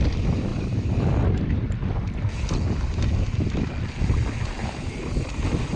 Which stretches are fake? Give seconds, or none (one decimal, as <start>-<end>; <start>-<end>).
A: 0.5-1.0; 4.6-5.3